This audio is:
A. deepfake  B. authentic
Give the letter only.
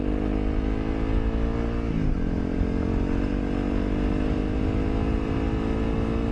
B